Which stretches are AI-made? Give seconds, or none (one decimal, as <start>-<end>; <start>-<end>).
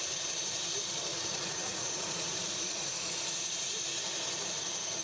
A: 1.1-3.1